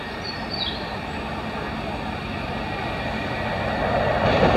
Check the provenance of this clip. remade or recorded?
recorded